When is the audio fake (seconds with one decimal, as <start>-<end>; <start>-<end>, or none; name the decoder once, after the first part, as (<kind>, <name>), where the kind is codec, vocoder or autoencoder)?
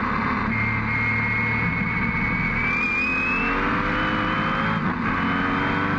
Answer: none